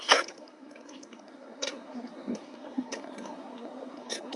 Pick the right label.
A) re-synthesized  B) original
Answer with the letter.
A